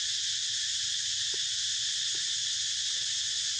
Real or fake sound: real